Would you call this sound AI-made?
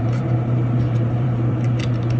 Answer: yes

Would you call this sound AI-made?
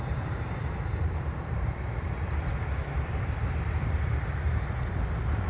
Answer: yes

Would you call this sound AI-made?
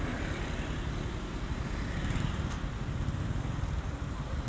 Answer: no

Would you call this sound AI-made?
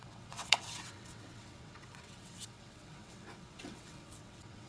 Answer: yes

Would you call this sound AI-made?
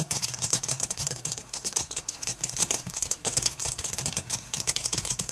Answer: yes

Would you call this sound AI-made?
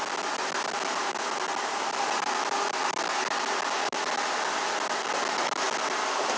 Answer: no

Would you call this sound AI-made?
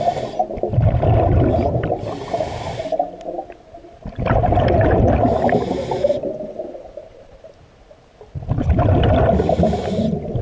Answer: no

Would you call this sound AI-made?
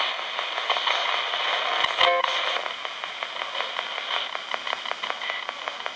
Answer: no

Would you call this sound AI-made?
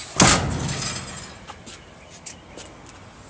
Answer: no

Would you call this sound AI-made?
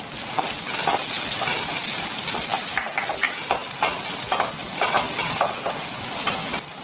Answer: no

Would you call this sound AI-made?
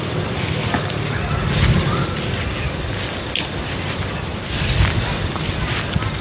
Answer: no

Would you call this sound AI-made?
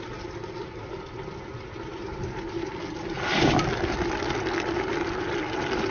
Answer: no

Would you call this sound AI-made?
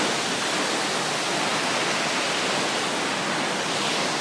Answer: no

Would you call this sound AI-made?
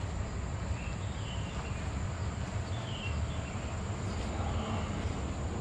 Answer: no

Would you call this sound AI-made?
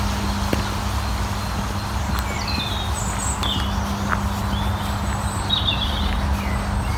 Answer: no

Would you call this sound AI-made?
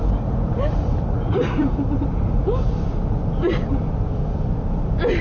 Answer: yes